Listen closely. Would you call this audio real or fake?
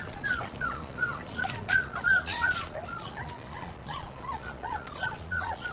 fake